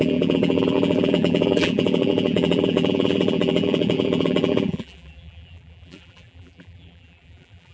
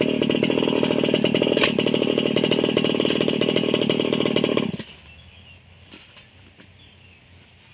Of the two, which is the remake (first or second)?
first